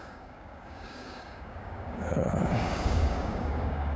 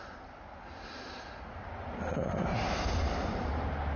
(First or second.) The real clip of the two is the second